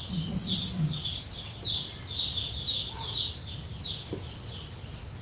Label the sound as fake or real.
real